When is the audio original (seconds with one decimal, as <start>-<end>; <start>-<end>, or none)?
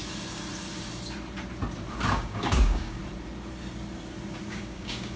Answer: 0.0-2.1; 3.0-4.5